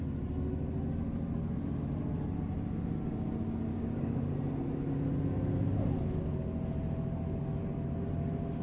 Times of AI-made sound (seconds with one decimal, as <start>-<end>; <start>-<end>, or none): 3.7-4.3